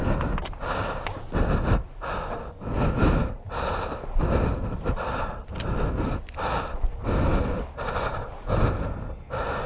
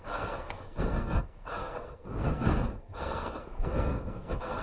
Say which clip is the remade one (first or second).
second